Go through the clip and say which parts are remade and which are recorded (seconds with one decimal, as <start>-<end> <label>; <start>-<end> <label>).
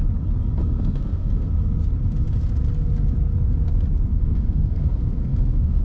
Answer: 0.0-0.6 recorded; 0.6-1.5 remade; 1.5-4.2 recorded; 4.2-5.8 remade